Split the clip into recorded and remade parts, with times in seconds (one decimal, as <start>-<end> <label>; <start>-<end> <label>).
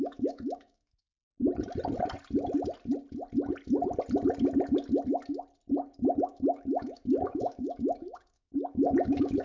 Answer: 0.0-1.3 remade; 1.3-6.2 recorded; 6.2-9.4 remade